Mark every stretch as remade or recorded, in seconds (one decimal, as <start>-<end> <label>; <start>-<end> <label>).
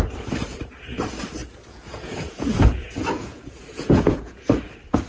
0.0-1.4 recorded; 1.4-4.5 remade; 4.5-5.1 recorded